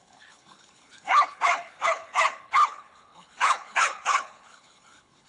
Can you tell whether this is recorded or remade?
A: remade